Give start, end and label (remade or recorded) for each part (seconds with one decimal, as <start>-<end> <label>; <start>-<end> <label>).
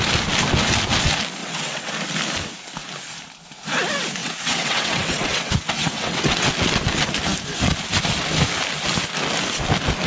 0.0-1.4 recorded; 1.4-1.9 remade; 1.9-4.2 recorded; 4.2-6.5 remade; 6.5-10.1 recorded